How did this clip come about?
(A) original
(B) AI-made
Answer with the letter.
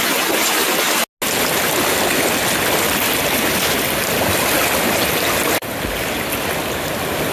A